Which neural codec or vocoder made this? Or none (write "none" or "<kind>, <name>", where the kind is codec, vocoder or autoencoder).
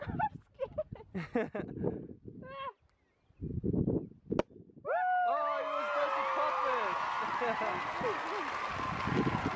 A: none